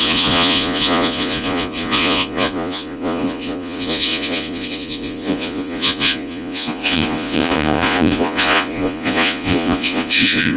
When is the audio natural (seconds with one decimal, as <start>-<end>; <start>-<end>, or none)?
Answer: none